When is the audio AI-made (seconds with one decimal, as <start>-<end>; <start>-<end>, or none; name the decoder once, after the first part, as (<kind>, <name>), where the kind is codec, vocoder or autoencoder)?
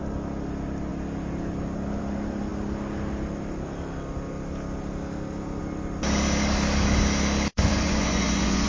7.5-8.7 (vocoder, Vocos)